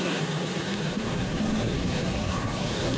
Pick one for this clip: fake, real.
fake